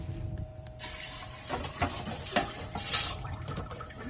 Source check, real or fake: fake